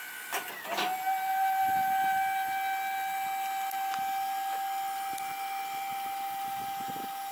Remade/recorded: recorded